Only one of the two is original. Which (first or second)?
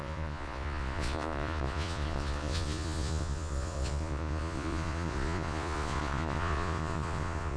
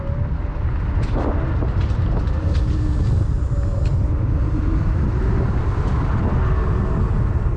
second